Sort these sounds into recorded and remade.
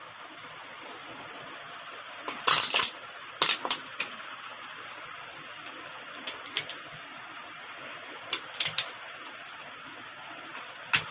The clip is recorded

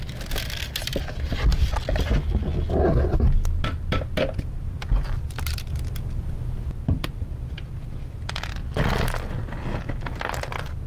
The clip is recorded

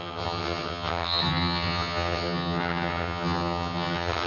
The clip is remade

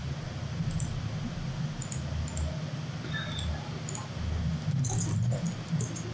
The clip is recorded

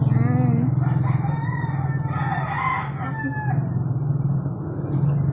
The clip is recorded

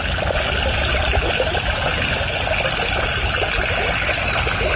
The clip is recorded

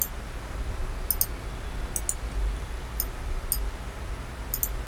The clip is recorded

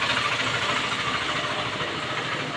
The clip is recorded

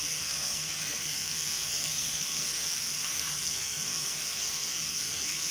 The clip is remade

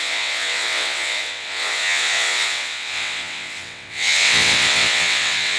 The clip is remade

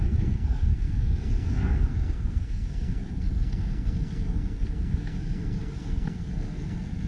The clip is remade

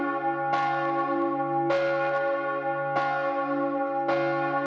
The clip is recorded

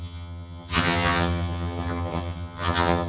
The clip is remade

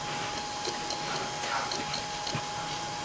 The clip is recorded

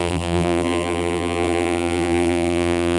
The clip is remade